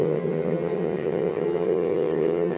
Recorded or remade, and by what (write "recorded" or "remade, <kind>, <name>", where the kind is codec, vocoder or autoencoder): remade, vocoder, HiFi-GAN